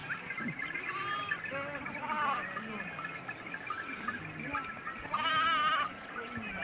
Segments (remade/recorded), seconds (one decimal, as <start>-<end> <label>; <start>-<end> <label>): 0.0-6.6 recorded